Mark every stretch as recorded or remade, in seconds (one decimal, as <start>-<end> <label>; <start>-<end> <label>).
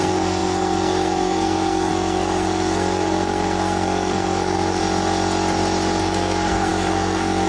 0.0-4.8 remade; 4.8-6.0 recorded; 6.0-7.5 remade